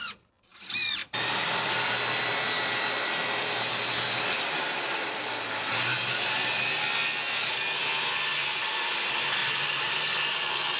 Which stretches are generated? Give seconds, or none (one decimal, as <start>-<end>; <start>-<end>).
1.0-2.2; 9.4-10.4